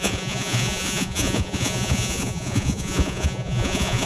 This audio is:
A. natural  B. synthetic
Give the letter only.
B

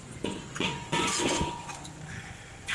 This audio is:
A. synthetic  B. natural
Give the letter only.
A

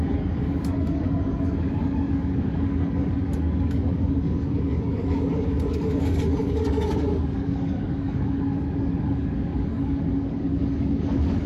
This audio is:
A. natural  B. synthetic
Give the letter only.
B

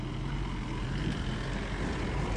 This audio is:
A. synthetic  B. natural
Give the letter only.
B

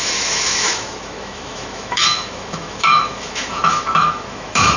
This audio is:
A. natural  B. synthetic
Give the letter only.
B